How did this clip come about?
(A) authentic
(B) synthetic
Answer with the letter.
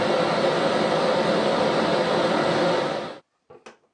A